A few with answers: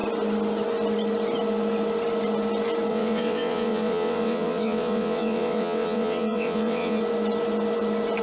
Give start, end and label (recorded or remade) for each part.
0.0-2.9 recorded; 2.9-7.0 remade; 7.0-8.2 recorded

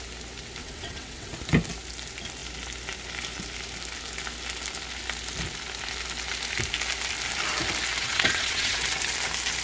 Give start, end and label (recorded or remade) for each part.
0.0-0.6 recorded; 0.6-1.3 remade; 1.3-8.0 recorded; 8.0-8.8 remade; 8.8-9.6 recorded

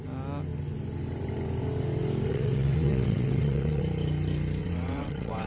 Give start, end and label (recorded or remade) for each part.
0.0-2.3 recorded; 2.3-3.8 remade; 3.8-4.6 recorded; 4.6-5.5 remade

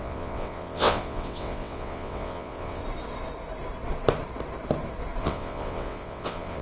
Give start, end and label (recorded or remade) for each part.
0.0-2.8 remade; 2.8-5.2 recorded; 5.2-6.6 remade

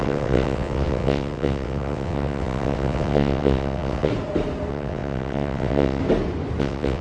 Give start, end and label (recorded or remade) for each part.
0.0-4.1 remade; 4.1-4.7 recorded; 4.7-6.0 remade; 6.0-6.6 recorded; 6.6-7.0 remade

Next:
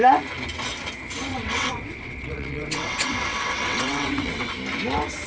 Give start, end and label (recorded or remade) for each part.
0.0-1.3 recorded; 1.3-4.5 remade; 4.5-5.3 recorded

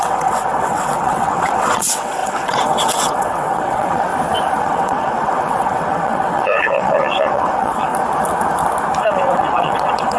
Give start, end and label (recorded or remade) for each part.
0.0-4.1 remade; 4.1-4.6 recorded; 4.6-7.9 remade; 7.9-9.0 recorded; 9.0-10.2 remade